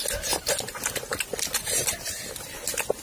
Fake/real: real